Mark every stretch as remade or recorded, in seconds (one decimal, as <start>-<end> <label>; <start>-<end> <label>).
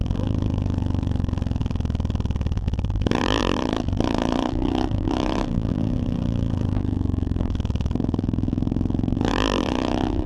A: 0.0-10.3 remade